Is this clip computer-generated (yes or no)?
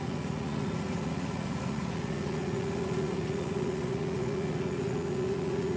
yes